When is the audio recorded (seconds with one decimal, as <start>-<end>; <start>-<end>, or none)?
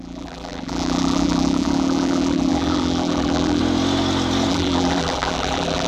3.6-4.5